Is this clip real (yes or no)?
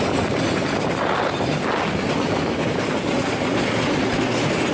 yes